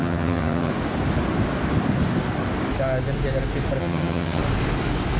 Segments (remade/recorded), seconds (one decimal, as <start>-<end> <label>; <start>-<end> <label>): 0.0-0.7 remade; 0.7-3.8 recorded; 3.8-4.4 remade; 4.4-5.2 recorded